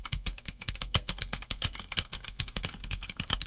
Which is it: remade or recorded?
remade